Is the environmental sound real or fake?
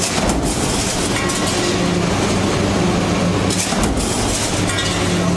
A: real